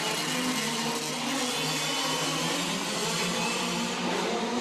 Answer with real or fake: real